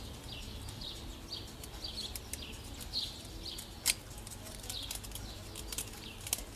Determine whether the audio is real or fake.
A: real